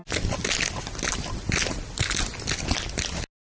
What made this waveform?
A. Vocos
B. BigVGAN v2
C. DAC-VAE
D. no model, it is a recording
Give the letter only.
D